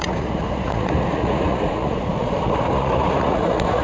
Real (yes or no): no